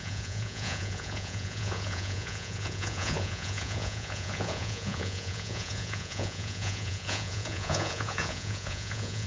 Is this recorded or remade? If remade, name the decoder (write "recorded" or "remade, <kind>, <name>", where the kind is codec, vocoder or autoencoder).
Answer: remade, vocoder, Vocos